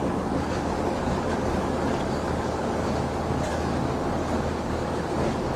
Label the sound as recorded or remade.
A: remade